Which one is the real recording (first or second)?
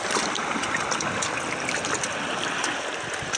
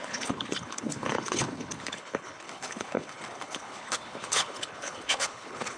first